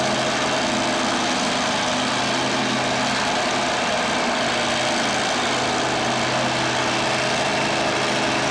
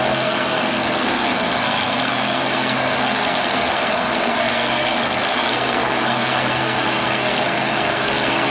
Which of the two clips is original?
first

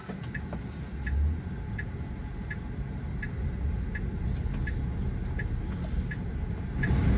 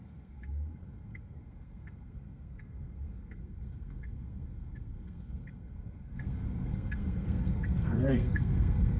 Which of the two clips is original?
first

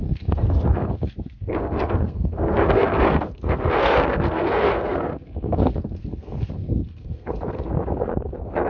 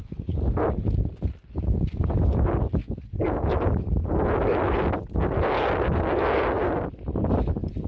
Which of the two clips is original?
second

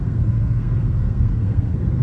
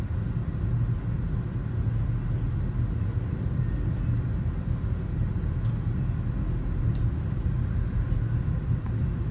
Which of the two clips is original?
second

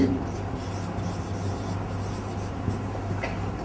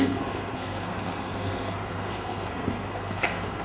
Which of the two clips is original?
first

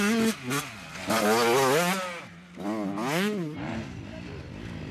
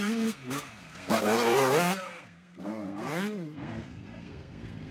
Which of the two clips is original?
first